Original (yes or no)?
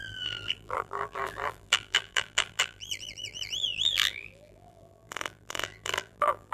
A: no